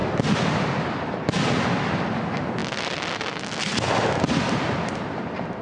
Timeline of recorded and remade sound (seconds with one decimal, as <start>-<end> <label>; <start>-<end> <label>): 0.0-2.6 recorded; 2.6-3.1 remade; 3.1-5.6 recorded